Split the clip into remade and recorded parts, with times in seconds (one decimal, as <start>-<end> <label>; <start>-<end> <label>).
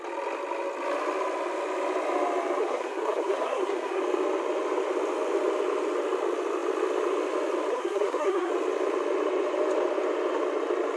0.0-2.6 recorded; 2.6-4.0 remade; 4.0-7.7 recorded; 7.7-8.5 remade; 8.5-11.0 recorded